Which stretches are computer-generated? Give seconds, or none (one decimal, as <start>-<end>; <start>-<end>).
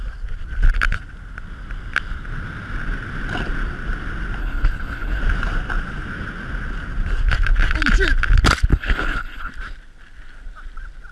4.4-5.2; 8.7-9.5